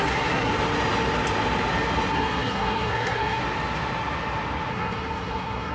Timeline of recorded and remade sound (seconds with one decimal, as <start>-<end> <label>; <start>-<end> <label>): 0.0-0.5 remade; 0.5-2.1 recorded; 2.1-3.4 remade; 3.4-4.7 recorded; 4.7-5.7 remade